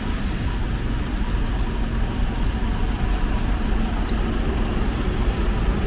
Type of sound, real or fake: real